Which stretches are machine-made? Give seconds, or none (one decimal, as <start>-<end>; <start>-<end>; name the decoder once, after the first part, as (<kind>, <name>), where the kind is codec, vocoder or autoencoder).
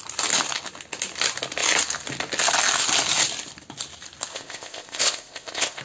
4.3-5.8 (codec, ZipCodec)